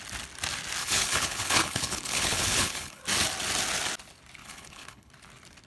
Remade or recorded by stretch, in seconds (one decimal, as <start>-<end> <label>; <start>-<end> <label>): 0.0-0.8 recorded; 0.8-3.0 remade; 3.0-4.4 recorded; 4.4-5.1 remade; 5.1-5.7 recorded

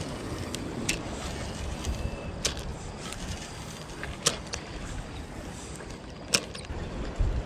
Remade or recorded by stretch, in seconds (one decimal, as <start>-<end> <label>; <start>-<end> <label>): 0.0-7.5 recorded

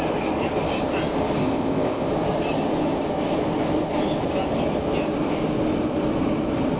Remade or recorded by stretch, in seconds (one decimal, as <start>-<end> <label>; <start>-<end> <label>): 0.0-1.4 recorded; 1.4-2.1 remade; 2.1-6.8 recorded

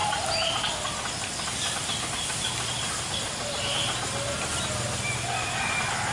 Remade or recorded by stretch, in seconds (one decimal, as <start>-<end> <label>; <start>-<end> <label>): 0.0-6.1 recorded

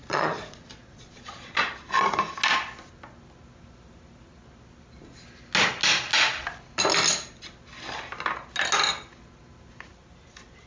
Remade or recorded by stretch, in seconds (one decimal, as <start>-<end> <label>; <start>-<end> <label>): 0.0-1.5 remade; 1.5-10.7 recorded

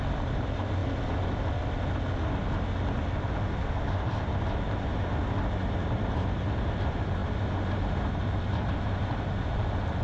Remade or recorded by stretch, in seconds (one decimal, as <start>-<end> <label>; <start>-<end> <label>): 0.0-0.8 remade; 0.8-3.7 recorded; 3.7-10.0 remade